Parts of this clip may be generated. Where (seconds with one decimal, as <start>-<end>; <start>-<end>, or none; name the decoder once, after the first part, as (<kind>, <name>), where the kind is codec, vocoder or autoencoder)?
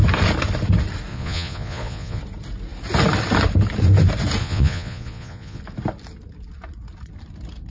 1.1-2.2 (vocoder, Vocos); 4.4-5.6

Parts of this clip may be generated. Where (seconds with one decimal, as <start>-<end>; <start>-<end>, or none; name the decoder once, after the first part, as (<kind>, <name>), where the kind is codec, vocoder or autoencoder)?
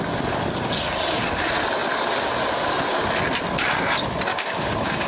4.3-5.1 (codec, DAC)